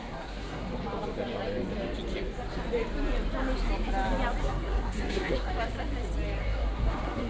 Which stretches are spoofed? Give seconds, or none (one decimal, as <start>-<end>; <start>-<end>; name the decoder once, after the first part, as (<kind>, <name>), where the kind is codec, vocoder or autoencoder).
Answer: 0.0-0.7 (codec, SNAC); 4.4-5.5; 6.4-7.3